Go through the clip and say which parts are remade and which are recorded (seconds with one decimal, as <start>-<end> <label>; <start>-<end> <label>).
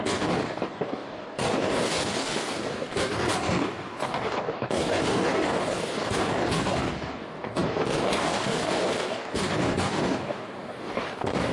0.0-11.5 remade